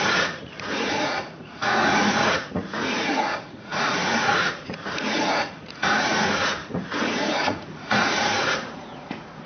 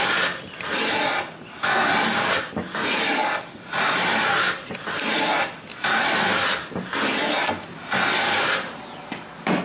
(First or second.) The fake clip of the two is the first